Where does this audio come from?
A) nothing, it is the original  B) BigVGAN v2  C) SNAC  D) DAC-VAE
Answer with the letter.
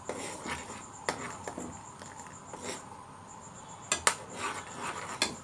A